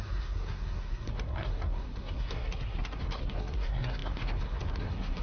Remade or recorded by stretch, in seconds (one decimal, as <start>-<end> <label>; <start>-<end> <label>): 0.0-5.2 remade